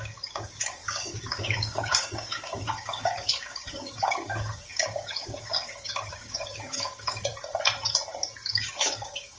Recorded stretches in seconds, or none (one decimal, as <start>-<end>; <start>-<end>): 7.3-8.5